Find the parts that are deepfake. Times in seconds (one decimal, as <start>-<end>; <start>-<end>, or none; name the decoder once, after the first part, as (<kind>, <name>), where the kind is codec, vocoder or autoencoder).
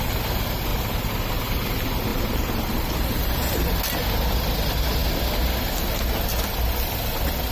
0.7-1.3 (vocoder, BigVGAN v2); 2.1-3.7